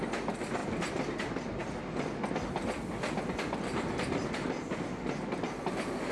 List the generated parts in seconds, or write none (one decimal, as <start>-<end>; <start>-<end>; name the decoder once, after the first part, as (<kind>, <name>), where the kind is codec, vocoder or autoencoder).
none